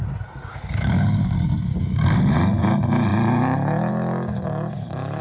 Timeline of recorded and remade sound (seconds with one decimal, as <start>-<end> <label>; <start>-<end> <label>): 0.0-0.5 recorded; 0.5-2.2 remade; 2.2-5.2 recorded